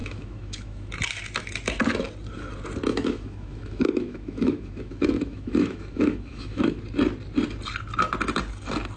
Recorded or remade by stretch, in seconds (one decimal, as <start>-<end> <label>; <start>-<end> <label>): 0.0-0.9 remade; 0.9-2.9 recorded; 2.9-6.8 remade; 6.8-9.0 recorded